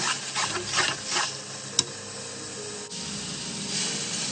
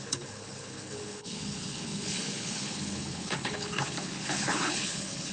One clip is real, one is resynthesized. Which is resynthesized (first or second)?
second